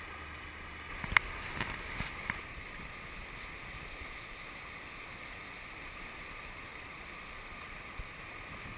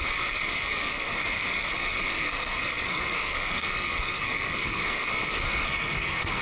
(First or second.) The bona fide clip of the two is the first